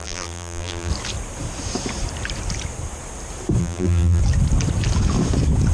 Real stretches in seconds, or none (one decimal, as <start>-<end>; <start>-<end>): 0.9-3.6; 4.2-5.7

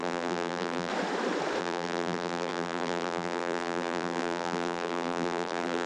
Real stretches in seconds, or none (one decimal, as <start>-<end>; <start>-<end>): 0.9-1.6